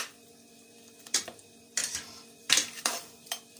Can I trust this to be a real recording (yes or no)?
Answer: no